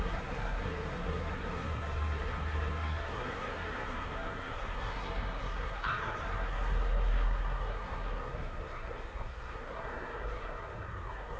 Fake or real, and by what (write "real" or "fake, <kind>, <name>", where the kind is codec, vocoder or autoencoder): fake, codec, SNAC